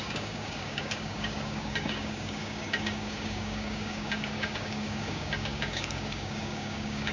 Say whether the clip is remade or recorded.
remade